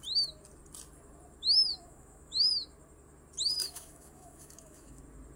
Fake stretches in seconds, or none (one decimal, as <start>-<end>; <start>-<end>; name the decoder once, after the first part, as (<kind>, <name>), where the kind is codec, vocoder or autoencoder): 1.7-2.5 (autoencoder, DAC-VAE); 3.6-5.0

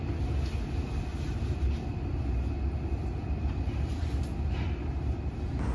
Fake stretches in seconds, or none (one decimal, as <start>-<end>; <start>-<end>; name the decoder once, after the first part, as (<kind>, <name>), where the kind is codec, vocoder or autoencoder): none

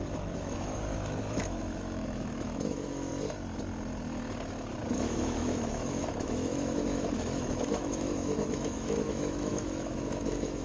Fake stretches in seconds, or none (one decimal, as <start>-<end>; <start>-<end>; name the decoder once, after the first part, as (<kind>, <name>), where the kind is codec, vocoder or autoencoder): 0.0-3.1 (autoencoder, DAC-VAE); 4.9-10.6